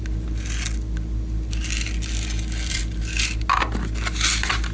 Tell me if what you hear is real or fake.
real